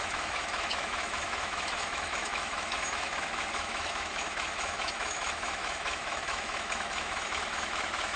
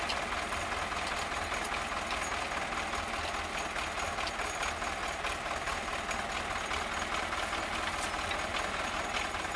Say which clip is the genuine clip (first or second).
second